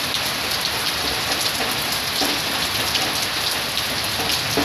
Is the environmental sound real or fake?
real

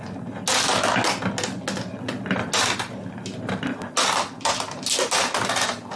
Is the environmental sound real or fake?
real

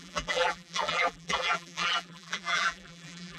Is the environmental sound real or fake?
fake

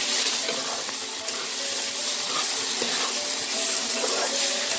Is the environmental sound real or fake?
real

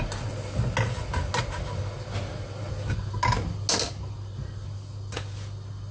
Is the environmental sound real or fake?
real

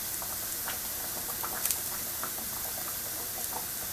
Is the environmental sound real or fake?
fake